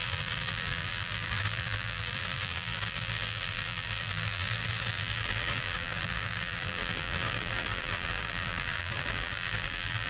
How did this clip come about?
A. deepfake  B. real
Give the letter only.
A